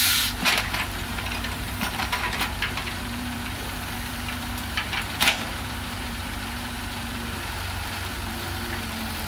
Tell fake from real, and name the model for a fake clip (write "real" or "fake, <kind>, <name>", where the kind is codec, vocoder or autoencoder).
fake, vocoder, BigVGAN v2